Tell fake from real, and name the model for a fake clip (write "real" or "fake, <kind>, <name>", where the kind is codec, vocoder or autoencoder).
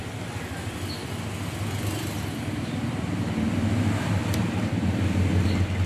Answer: real